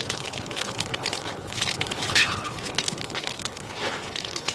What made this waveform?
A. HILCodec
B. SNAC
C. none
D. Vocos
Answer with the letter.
A